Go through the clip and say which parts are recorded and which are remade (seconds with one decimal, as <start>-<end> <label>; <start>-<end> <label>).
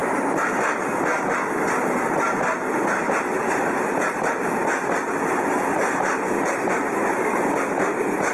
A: 0.0-8.3 recorded